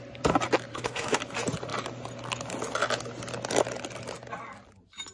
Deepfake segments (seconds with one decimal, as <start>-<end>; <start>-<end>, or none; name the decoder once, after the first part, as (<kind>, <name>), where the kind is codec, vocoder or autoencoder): 0.7-1.2 (autoencoder, DAC-VAE)